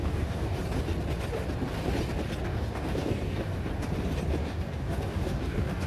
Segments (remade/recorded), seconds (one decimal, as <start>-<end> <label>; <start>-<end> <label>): 0.0-0.6 remade; 0.6-2.5 recorded; 2.5-3.7 remade; 3.7-4.4 recorded; 4.4-5.9 remade